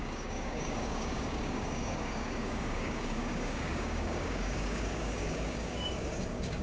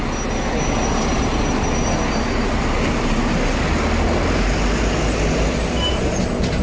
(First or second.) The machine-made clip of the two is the first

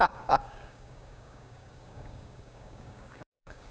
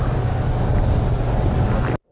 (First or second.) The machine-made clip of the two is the first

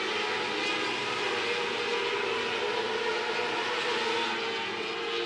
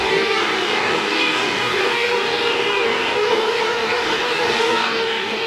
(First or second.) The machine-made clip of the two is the second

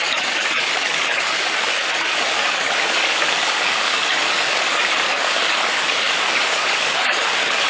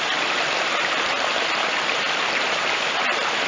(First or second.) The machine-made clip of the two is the first